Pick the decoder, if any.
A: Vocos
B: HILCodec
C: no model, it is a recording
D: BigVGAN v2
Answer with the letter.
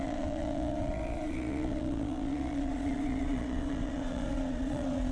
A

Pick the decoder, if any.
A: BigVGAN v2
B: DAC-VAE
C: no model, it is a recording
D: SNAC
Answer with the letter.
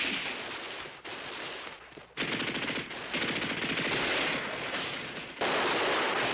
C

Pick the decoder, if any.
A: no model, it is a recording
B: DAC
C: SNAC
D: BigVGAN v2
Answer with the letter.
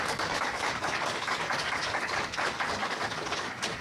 B